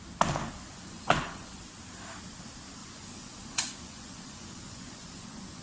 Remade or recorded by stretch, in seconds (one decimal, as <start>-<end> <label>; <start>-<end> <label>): 0.0-0.7 recorded; 0.7-1.6 remade; 1.6-2.8 recorded; 2.8-5.6 remade